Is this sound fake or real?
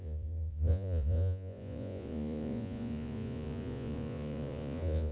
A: fake